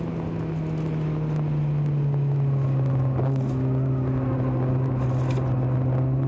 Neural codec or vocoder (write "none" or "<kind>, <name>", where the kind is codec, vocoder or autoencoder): none